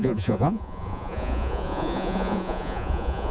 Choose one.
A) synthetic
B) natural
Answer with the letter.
A